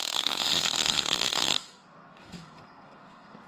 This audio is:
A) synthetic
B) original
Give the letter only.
A